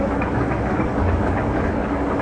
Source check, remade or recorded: remade